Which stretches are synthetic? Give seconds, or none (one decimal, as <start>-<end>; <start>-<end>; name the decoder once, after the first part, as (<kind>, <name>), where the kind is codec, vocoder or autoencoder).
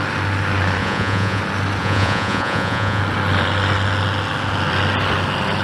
0.8-1.4 (vocoder, Vocos); 1.8-3.0